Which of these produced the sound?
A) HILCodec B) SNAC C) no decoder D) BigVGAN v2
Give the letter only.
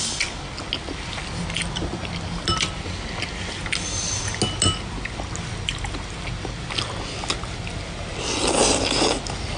C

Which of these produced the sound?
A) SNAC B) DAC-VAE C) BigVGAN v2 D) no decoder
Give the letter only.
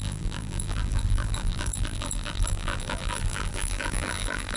C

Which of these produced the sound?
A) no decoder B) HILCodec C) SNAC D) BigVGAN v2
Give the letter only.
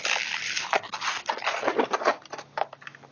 A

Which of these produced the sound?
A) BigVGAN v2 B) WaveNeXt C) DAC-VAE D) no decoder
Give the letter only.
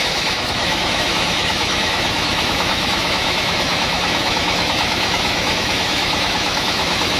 C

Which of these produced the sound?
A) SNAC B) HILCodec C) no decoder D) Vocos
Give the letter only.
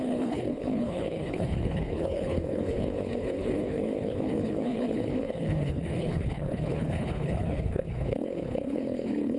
B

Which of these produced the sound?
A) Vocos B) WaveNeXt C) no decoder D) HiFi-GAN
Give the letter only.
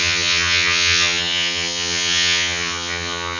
D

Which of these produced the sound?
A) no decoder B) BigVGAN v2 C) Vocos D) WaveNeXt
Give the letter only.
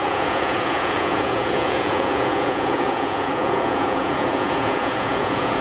C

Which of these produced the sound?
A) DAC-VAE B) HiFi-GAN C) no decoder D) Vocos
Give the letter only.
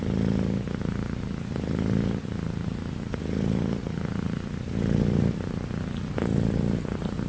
C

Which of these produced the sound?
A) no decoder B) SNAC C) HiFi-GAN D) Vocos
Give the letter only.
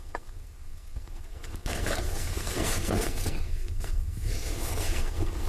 B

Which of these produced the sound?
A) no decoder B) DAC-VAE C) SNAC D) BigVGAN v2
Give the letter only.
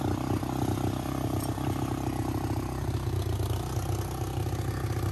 A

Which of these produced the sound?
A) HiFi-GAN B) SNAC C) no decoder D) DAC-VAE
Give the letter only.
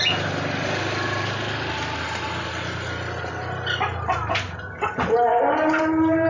C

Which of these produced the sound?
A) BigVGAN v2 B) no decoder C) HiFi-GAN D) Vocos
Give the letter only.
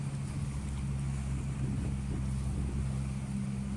B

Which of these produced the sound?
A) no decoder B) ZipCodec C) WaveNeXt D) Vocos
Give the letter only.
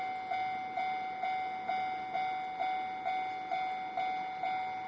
A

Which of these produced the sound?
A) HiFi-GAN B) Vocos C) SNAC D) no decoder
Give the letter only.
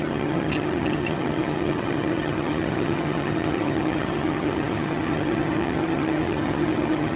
A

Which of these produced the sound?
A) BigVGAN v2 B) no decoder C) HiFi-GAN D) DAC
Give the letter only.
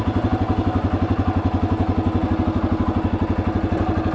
B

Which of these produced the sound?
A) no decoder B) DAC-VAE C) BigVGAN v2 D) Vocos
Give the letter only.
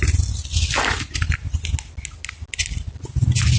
A